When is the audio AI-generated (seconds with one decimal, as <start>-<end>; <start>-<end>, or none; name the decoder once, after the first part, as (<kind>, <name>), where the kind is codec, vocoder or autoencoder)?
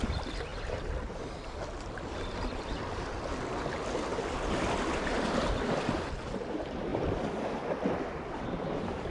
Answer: 4.1-5.7 (vocoder, BigVGAN v2)